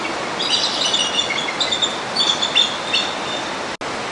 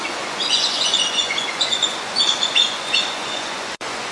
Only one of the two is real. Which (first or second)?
first